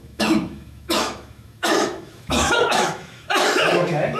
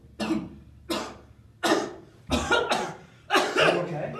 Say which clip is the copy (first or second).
first